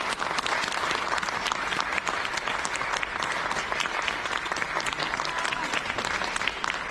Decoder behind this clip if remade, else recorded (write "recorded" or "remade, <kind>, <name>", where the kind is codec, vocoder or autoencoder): recorded